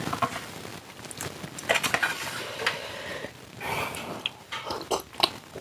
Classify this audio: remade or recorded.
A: recorded